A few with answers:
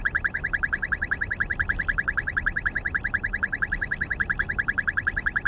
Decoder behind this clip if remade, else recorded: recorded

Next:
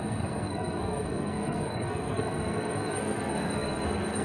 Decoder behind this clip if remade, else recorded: remade, codec, SNAC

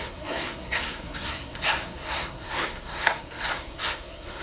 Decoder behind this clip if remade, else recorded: remade, codec, SNAC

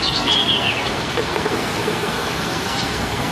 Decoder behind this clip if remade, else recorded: remade, codec, SNAC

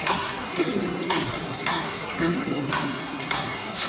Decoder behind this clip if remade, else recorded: remade, codec, SNAC